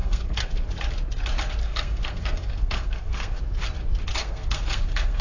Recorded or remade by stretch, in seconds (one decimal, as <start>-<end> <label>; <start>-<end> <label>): 0.0-0.5 remade; 0.5-1.6 recorded; 1.6-3.4 remade; 3.4-4.2 recorded; 4.2-5.2 remade